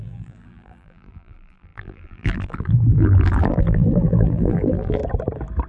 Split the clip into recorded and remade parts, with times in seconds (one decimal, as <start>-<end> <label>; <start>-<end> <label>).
0.0-5.0 remade; 5.0-5.7 recorded